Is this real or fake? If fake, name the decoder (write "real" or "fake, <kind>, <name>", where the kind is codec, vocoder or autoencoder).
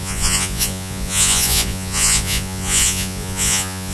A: fake, vocoder, Vocos